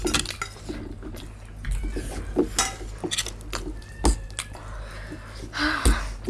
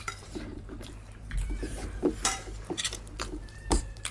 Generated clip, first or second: second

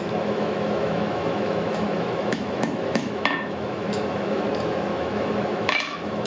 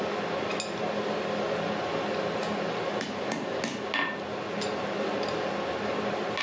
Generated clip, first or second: first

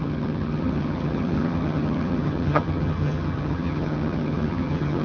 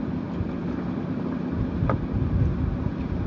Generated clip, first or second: first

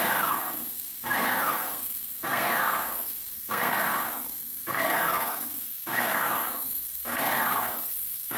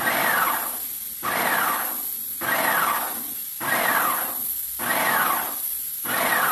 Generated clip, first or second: first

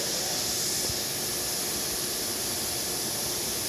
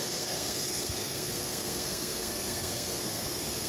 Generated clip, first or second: second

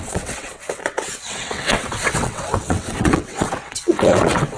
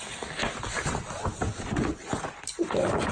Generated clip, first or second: first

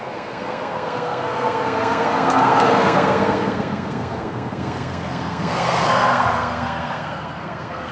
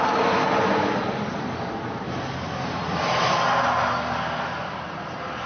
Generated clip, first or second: first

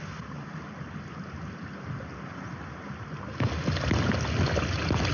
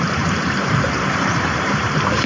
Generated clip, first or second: second